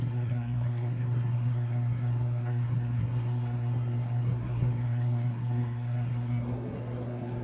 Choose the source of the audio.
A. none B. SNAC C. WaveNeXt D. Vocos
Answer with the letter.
B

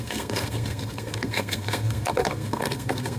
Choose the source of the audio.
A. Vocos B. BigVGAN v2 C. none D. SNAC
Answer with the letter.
D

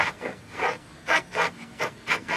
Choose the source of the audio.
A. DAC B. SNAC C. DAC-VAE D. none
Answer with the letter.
B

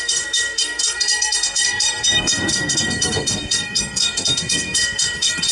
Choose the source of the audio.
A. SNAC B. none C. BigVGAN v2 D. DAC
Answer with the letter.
A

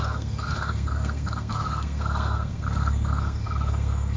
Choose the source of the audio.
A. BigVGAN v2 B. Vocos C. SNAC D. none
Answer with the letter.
C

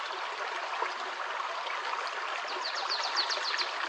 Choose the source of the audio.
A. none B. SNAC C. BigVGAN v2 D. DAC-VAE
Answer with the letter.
A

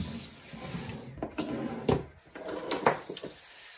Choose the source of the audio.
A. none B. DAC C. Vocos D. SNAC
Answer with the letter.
A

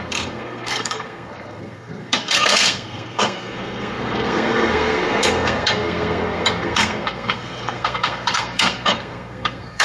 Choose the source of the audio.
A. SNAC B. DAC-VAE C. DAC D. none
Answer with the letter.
A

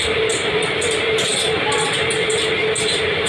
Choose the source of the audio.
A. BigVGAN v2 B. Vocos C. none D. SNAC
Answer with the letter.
C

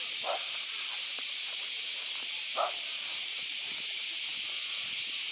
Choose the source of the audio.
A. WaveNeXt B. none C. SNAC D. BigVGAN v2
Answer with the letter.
B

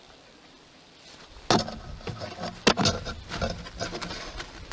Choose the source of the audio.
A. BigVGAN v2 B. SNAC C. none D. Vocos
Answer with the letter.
C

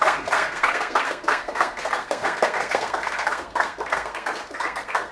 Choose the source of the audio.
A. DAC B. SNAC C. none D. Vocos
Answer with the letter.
B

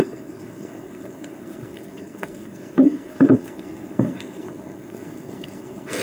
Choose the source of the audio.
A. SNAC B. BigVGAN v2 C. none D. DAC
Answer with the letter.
A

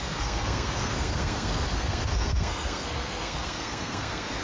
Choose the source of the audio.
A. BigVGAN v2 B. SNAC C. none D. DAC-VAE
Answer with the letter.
B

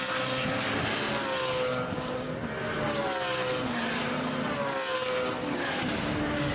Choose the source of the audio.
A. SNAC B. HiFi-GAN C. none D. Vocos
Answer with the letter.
C